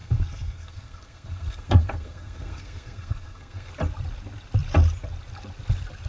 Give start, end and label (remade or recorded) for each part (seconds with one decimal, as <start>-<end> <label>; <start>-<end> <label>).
0.0-3.7 remade; 3.7-6.1 recorded